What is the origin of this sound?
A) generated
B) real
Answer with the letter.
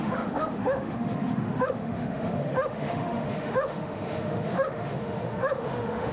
A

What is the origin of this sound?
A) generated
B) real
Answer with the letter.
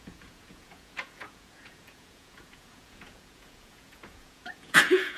A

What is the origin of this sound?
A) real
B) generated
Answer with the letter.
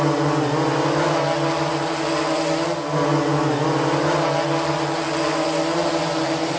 A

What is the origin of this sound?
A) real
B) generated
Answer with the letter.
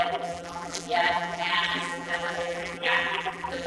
B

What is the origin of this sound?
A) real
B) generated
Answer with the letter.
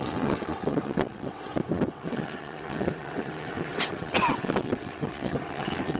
B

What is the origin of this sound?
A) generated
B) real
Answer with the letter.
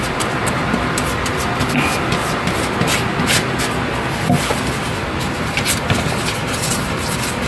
B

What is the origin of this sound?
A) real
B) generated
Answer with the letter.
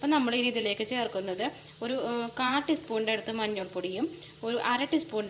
B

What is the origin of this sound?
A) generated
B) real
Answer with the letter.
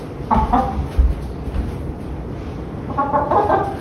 B